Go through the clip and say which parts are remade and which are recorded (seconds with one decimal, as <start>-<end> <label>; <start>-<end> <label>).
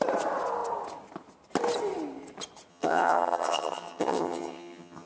0.0-2.7 recorded; 2.7-5.1 remade